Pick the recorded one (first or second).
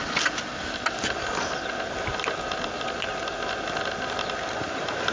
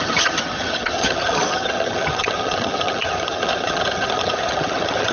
first